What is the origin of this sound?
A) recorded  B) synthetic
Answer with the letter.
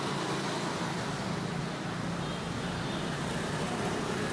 A